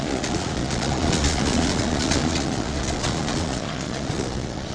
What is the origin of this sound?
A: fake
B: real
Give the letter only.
A